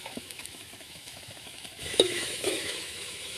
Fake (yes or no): yes